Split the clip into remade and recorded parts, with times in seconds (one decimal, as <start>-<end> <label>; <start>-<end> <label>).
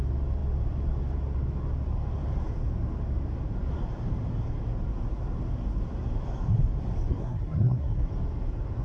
0.0-7.1 recorded; 7.1-8.1 remade; 8.1-8.8 recorded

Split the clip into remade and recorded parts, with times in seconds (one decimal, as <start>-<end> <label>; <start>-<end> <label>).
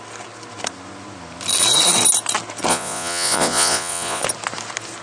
0.0-2.7 recorded; 2.7-4.2 remade; 4.2-5.0 recorded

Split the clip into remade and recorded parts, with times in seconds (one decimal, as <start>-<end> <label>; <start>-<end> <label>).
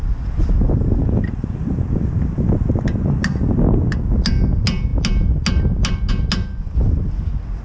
0.0-7.6 recorded